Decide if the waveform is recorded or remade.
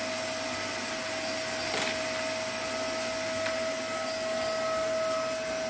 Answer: recorded